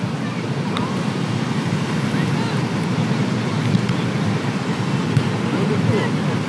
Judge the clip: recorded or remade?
recorded